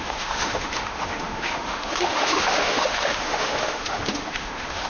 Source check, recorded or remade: remade